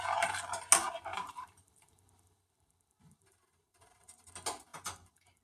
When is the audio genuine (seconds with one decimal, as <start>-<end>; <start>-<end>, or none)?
0.0-1.1; 4.3-4.7